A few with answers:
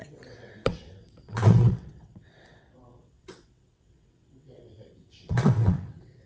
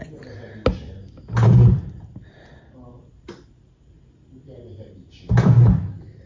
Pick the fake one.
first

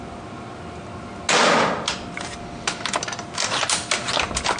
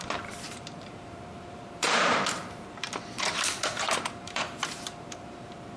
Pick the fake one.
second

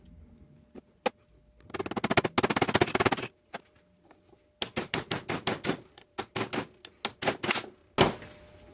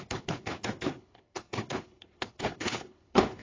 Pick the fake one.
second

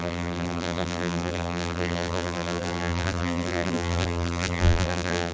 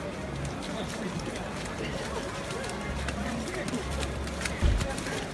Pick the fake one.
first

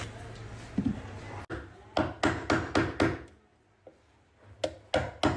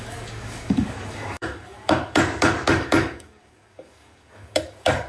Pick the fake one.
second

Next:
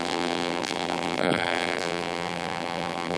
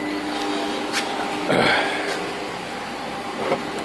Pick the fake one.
first